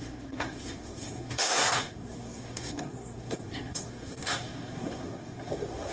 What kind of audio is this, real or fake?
fake